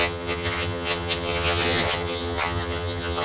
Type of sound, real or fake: fake